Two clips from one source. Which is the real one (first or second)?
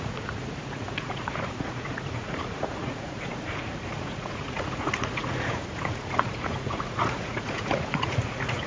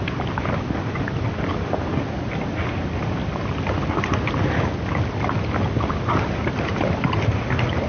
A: second